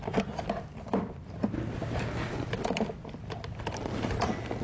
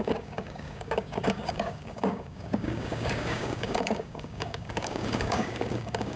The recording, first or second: first